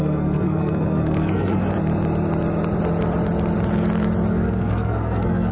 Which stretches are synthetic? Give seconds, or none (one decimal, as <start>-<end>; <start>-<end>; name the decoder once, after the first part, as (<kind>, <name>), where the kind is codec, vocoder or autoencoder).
0.0-1.6 (codec, SNAC); 4.3-5.5